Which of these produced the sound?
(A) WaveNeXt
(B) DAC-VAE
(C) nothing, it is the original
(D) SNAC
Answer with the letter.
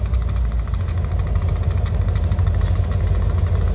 C